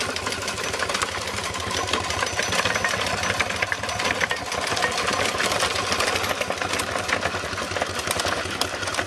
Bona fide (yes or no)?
yes